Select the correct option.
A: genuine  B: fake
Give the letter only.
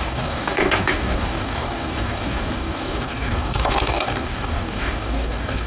B